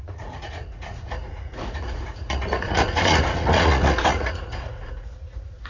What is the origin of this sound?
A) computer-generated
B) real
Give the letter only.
A